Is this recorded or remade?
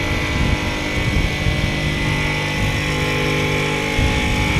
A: recorded